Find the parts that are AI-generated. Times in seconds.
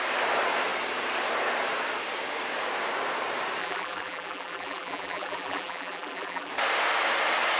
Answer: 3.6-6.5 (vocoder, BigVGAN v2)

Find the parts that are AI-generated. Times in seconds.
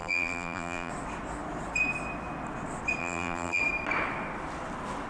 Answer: 0.0-0.9 (vocoder, BigVGAN v2); 3.0-3.6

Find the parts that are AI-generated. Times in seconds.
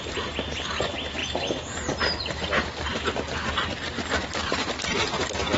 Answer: 1.2-4.6 (vocoder, BigVGAN v2)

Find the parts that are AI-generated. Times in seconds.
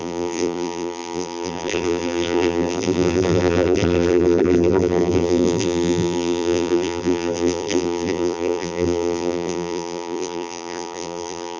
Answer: 0.0-11.6 (vocoder, BigVGAN v2)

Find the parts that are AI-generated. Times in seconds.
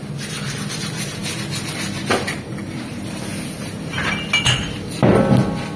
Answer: none